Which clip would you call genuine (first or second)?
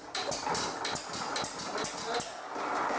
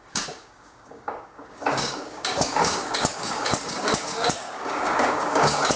first